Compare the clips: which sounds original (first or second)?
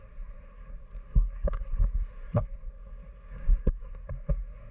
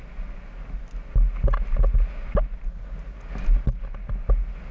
second